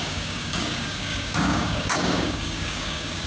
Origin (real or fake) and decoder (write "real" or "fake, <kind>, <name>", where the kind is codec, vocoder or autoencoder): fake, codec, DAC